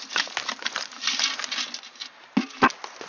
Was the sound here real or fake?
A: real